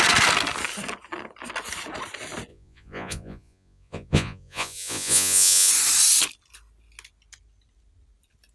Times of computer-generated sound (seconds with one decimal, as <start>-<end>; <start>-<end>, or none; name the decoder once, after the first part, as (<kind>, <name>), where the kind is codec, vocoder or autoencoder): 2.5-5.7 (vocoder, Vocos)